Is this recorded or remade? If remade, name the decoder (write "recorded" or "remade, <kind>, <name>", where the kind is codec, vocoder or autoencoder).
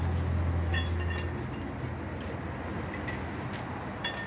recorded